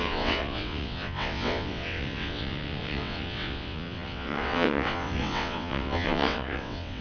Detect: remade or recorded remade